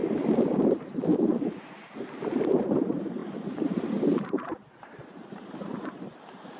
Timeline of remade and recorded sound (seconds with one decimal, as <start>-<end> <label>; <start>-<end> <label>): 0.0-0.7 recorded; 0.7-1.1 remade; 1.1-2.4 recorded; 2.4-6.6 remade

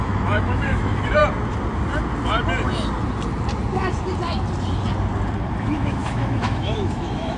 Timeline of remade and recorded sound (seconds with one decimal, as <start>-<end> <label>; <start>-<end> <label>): 0.0-1.2 remade; 1.2-5.6 recorded; 5.6-7.4 remade

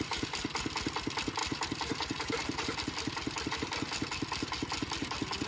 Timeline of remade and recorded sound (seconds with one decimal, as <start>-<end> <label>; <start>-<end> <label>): 0.0-5.5 recorded

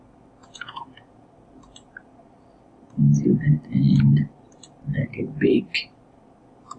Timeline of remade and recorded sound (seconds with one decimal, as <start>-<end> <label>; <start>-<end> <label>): 0.0-0.4 recorded; 0.4-1.3 remade; 1.3-6.8 recorded

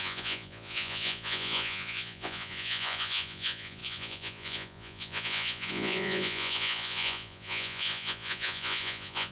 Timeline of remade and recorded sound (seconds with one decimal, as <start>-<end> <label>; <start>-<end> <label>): 0.0-9.3 remade

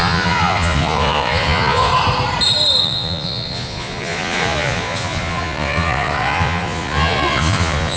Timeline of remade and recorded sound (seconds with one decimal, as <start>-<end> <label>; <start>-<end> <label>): 0.0-1.9 remade; 1.9-2.8 recorded; 2.8-8.0 remade

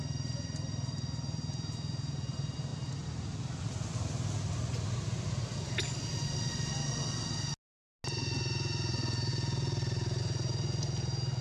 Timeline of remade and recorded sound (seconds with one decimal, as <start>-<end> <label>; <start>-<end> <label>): 0.0-11.4 recorded